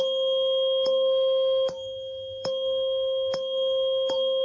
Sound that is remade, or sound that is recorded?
remade